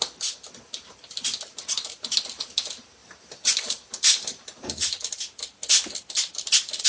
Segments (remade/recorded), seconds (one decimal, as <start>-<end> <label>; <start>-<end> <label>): 0.0-3.0 recorded; 3.0-4.6 remade; 4.6-6.9 recorded